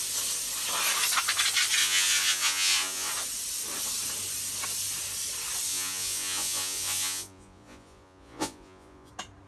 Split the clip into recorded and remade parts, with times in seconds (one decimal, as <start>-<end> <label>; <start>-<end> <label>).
0.0-1.8 recorded; 1.8-3.1 remade; 3.1-5.7 recorded; 5.7-9.1 remade; 9.1-9.5 recorded